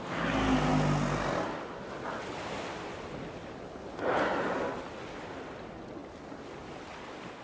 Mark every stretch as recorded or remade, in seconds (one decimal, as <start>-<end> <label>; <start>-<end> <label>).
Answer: 0.0-7.4 recorded